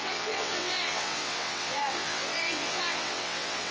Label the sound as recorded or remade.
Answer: remade